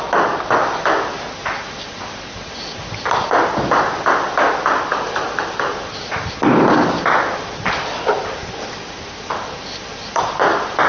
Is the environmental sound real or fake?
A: real